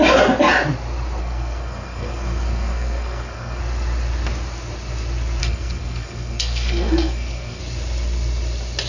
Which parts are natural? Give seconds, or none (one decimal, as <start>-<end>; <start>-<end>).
0.0-1.2; 3.6-5.4; 7.6-8.9